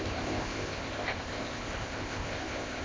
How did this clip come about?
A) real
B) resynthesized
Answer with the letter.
B